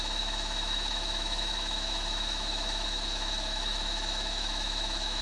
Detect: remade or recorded remade